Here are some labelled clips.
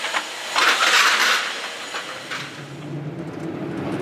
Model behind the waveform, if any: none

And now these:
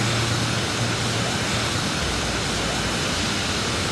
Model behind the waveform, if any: none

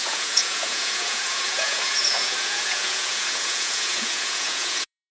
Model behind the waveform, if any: vocoder, Vocos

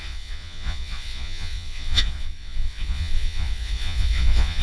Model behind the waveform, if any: vocoder, Vocos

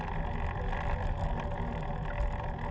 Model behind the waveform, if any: none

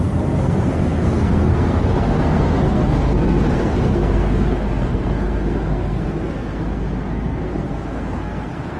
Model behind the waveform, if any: codec, SNAC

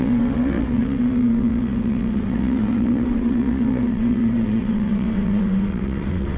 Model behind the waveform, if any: vocoder, WaveNeXt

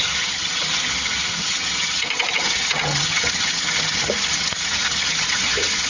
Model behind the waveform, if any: vocoder, HiFi-GAN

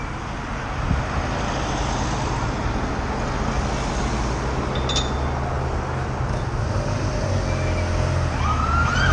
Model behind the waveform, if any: none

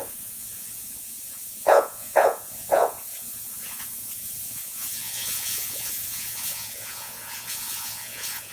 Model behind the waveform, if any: vocoder, Vocos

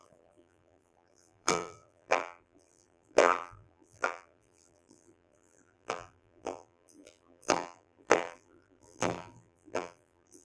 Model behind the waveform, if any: vocoder, BigVGAN v2